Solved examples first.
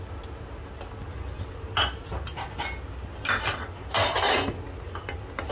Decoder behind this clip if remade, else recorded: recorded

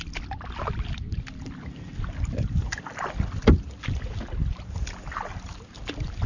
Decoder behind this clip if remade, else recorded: recorded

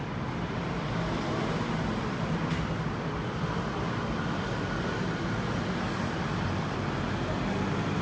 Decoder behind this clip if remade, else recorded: recorded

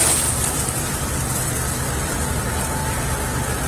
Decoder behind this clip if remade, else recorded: remade, vocoder, BigVGAN v2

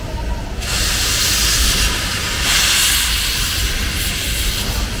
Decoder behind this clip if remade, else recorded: recorded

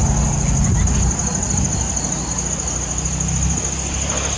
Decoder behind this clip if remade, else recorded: recorded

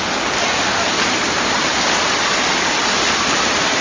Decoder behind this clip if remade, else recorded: recorded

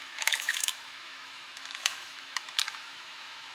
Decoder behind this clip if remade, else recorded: remade, autoencoder, DAC-VAE